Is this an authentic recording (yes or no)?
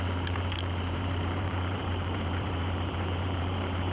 no